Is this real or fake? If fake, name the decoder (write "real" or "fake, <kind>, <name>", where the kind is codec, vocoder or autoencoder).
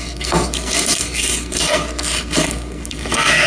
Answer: fake, codec, SNAC